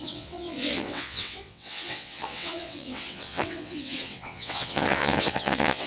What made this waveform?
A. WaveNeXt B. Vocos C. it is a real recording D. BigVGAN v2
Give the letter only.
A